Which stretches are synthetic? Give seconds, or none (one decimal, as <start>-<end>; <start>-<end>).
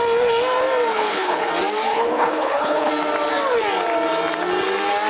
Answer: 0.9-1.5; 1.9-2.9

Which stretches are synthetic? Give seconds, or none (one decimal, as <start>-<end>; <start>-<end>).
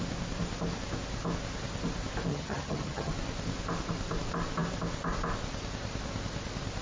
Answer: 2.3-3.1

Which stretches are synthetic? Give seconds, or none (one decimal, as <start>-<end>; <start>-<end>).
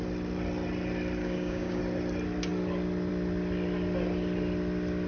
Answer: 1.2-1.8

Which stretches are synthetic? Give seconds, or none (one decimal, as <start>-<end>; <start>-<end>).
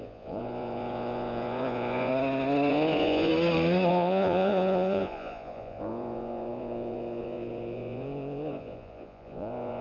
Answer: 0.0-2.1; 2.7-3.3; 3.9-9.8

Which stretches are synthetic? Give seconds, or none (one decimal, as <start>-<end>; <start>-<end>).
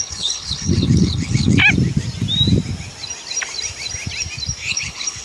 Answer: 0.0-1.6; 4.7-5.2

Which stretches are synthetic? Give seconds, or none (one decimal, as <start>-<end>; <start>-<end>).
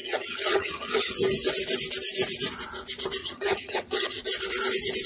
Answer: 0.0-1.1; 3.2-4.2